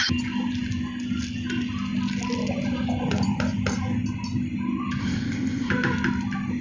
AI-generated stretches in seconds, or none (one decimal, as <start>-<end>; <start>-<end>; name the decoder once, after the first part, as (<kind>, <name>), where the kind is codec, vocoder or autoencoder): 5.0-5.7 (codec, ZipCodec)